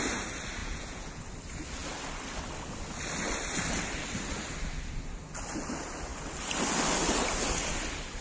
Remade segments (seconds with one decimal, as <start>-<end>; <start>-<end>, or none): 0.6-1.2